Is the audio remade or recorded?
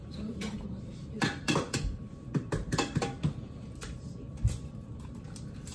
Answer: remade